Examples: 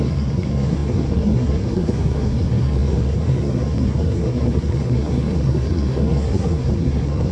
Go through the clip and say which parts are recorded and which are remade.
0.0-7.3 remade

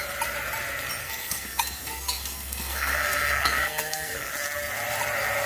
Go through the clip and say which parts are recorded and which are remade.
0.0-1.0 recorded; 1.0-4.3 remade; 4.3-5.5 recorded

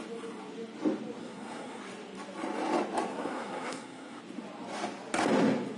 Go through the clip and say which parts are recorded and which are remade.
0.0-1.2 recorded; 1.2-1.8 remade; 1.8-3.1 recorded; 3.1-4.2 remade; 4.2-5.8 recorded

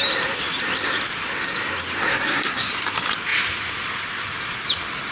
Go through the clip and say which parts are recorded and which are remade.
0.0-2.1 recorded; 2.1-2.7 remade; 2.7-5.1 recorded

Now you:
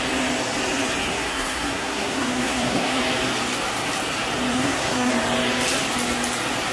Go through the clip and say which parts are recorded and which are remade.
0.0-1.1 recorded; 1.1-3.0 remade; 3.0-4.5 recorded; 4.5-5.1 remade; 5.1-6.7 recorded